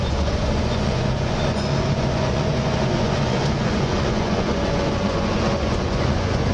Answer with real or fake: fake